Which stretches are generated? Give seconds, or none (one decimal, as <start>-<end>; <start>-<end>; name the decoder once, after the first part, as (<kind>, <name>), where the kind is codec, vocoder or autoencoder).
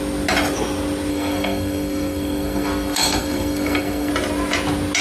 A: 1.1-4.1 (codec, SNAC)